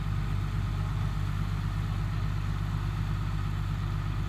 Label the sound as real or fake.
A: real